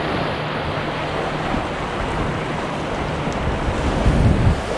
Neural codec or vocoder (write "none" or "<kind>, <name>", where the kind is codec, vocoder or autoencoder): none